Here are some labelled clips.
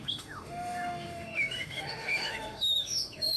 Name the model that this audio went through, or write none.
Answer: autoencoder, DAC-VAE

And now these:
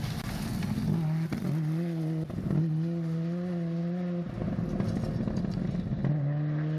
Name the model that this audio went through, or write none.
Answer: none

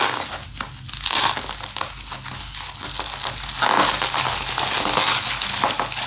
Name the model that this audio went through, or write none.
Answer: none